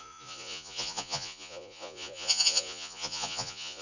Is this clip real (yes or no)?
no